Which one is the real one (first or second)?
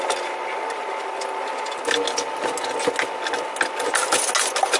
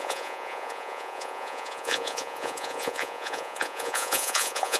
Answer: first